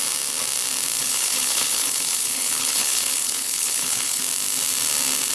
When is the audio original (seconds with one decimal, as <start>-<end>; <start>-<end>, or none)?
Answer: 0.0-1.0; 4.2-5.3